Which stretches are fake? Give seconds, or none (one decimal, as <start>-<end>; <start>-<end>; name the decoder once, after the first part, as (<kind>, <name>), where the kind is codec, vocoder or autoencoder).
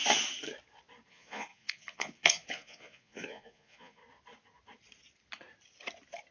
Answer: 1.1-4.0 (vocoder, Vocos)